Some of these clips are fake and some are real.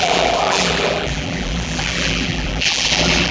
fake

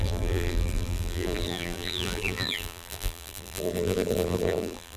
fake